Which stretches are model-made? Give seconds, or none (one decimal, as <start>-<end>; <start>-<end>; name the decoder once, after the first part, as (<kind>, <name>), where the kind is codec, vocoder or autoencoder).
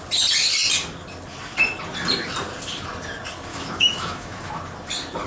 3.5-4.5 (autoencoder, DAC-VAE)